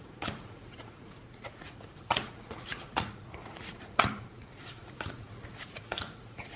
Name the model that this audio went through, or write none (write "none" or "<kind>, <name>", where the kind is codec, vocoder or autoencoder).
vocoder, Vocos